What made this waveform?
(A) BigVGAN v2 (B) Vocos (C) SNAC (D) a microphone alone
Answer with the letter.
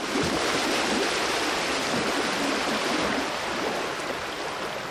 D